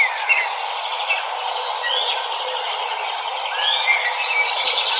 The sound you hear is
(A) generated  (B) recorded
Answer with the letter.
B